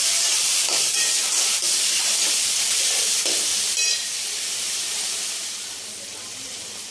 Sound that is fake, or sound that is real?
fake